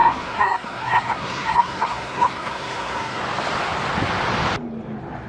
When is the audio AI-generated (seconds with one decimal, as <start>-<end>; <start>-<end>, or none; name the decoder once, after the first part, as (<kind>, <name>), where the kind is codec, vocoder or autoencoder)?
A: 0.0-3.2 (codec, SNAC)